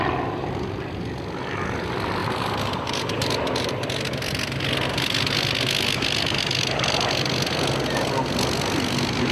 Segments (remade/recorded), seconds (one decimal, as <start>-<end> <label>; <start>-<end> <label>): 0.0-2.2 recorded; 2.2-3.7 remade; 3.7-9.3 recorded